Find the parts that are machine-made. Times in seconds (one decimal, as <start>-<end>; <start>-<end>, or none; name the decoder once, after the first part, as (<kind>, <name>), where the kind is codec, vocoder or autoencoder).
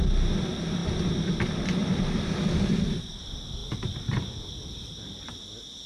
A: none